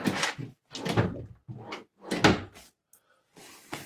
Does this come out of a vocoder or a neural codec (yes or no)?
no